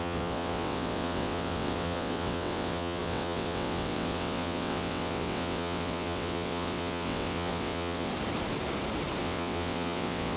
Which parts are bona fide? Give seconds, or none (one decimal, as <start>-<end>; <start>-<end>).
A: 8.1-9.2